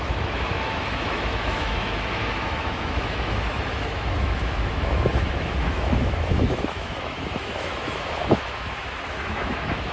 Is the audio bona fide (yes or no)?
no